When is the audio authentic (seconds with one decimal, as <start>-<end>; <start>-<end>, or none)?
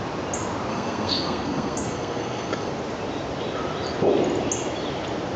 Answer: 0.0-0.7; 2.7-5.4